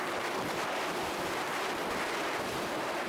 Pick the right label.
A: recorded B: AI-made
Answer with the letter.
A